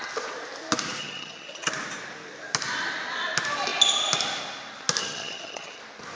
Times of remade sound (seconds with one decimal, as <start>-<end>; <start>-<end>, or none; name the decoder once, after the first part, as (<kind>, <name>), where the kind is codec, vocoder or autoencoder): 1.0-1.7 (vocoder, HiFi-GAN); 5.0-5.8